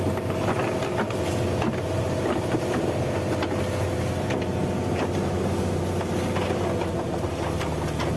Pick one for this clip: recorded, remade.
recorded